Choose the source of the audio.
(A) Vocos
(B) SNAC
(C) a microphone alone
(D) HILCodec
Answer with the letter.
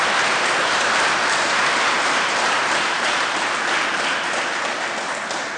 C